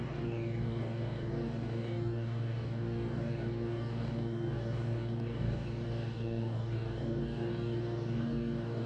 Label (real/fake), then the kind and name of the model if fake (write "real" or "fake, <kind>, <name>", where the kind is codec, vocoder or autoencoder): fake, codec, DAC